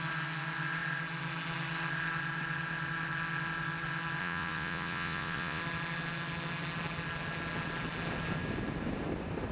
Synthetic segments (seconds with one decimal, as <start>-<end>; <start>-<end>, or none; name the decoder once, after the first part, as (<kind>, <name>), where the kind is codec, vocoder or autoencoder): 4.2-5.6 (vocoder, Vocos)

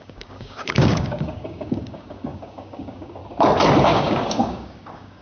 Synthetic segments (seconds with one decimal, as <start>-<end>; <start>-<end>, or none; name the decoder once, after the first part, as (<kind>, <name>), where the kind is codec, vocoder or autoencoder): 0.0-3.2 (codec, DAC); 3.8-5.2

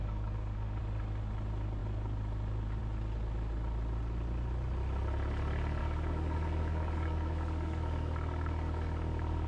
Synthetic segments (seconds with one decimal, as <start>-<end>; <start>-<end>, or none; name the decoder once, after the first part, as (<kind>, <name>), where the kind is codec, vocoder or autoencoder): 0.0-0.8 (codec, DAC); 5.8-9.5